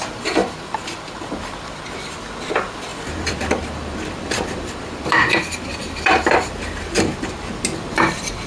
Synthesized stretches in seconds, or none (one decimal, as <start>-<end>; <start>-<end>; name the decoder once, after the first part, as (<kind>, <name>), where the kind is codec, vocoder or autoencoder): 0.4-1.3 (vocoder, BigVGAN v2); 2.9-7.3